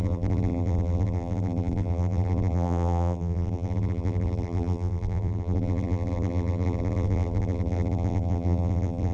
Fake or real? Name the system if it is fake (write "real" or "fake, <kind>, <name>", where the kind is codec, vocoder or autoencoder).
fake, vocoder, BigVGAN v2